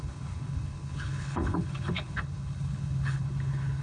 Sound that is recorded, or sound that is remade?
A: remade